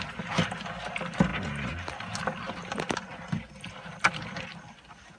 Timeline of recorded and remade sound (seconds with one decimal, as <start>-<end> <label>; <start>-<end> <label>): 0.0-5.2 recorded